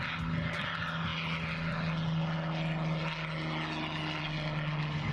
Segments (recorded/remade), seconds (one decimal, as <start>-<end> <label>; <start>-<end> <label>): 0.0-5.1 recorded